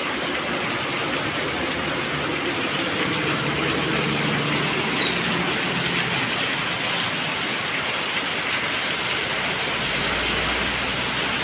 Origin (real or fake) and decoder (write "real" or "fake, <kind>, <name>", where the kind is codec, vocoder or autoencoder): real